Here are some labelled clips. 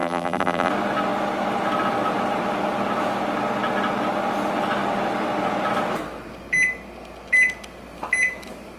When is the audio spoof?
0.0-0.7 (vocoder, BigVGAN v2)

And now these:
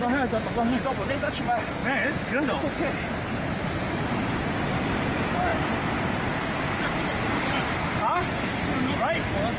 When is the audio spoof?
5.5-7.9 (vocoder, BigVGAN v2)

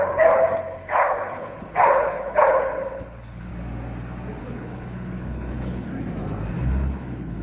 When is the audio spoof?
0.0-3.5 (codec, HILCodec); 4.4-5.9; 6.5-7.4

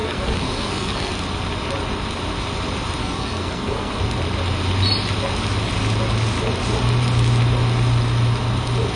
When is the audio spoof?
0.0-1.1 (codec, SNAC); 3.0-4.0